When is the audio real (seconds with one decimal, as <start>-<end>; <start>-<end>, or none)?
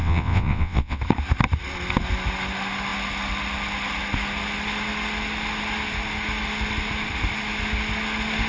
1.0-8.5